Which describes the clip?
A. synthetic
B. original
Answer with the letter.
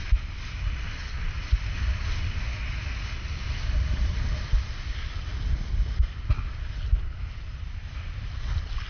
B